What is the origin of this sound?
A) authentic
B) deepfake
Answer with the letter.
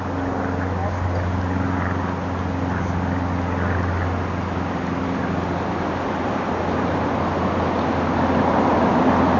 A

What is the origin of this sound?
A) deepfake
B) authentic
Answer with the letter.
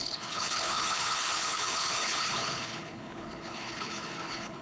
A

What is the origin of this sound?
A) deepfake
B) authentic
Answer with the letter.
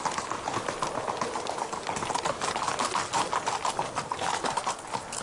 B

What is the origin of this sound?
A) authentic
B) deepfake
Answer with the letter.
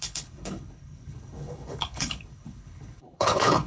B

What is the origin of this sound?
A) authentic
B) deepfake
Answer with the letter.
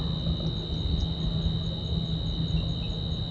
A